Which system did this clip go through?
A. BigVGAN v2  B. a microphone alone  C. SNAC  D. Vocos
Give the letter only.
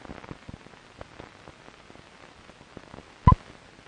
B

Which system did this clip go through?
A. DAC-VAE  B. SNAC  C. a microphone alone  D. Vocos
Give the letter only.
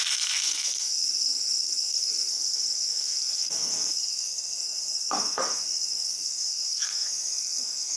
B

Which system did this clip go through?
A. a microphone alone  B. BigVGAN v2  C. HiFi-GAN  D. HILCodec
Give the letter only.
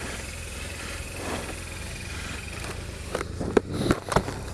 A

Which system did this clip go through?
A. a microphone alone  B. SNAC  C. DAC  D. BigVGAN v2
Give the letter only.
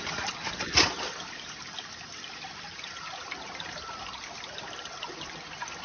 A